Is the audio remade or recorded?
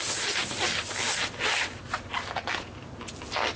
recorded